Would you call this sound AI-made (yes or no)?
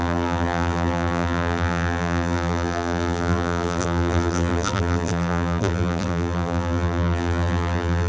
yes